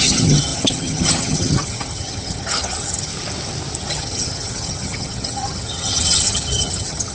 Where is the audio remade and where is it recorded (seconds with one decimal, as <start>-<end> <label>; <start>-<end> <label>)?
0.0-3.1 remade; 3.1-3.9 recorded; 3.9-7.1 remade